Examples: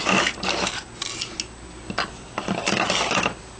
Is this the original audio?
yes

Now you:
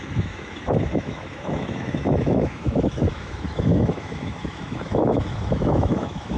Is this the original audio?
no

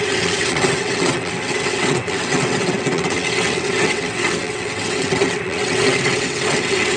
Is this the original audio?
no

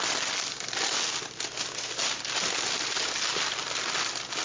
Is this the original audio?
yes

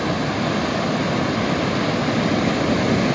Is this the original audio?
yes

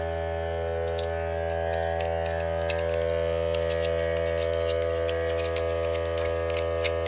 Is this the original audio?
yes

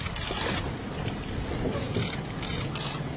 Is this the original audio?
yes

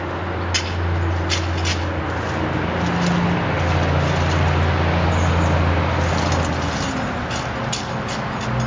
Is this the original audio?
yes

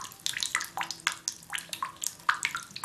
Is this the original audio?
yes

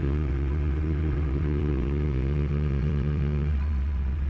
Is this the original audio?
no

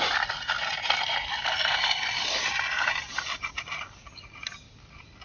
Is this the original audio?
yes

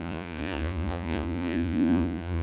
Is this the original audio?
no